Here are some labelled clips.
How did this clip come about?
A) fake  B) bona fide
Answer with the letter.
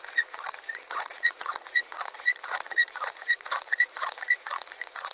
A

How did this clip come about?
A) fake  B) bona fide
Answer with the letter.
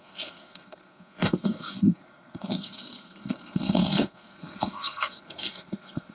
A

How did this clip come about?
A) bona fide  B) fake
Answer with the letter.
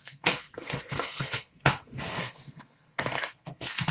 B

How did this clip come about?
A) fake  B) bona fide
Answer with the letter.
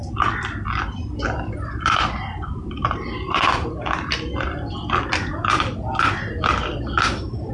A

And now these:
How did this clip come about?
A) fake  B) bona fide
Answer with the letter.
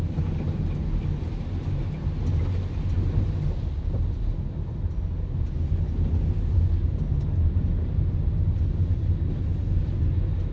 B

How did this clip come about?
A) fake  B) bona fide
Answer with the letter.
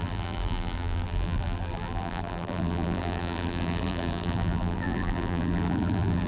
A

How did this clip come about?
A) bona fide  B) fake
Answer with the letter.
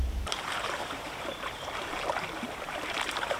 B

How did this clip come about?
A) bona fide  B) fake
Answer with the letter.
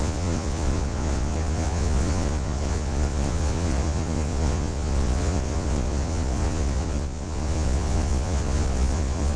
B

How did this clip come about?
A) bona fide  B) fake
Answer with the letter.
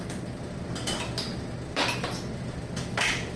A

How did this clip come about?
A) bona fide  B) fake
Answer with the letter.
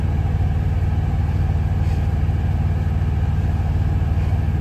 A